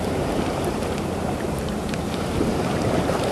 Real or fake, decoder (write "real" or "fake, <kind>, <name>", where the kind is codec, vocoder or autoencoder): fake, vocoder, BigVGAN v2